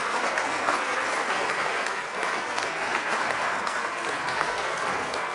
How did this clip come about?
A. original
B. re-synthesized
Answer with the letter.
B